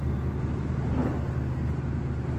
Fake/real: real